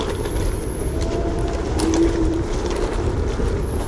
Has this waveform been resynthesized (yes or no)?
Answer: no